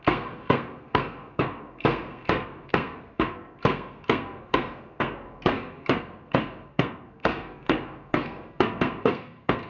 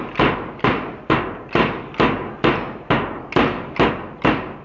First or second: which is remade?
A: first